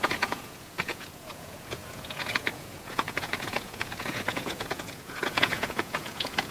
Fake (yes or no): yes